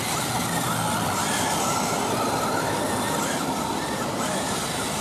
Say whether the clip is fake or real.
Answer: real